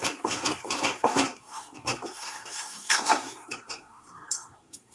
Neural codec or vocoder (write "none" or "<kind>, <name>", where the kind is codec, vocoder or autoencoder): codec, SNAC